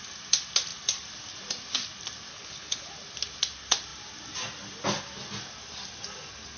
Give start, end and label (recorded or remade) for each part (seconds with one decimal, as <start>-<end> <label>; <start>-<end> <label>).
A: 0.0-2.3 recorded; 2.3-2.8 remade; 2.8-6.6 recorded